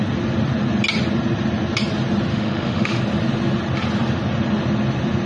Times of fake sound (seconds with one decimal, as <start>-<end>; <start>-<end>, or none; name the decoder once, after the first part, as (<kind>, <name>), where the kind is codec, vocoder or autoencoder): 2.3-3.0 (autoencoder, DAC-VAE)